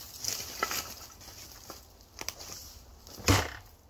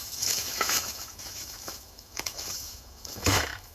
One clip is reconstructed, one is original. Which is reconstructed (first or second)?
second